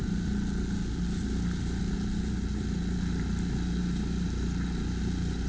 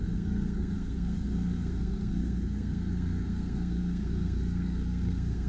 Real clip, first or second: first